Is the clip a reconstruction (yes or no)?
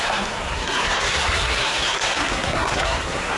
yes